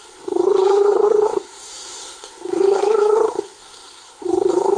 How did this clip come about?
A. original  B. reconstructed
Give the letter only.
B